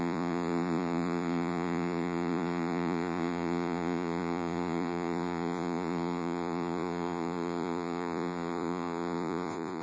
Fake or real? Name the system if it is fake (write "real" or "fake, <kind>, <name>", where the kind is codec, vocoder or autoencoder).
fake, vocoder, Vocos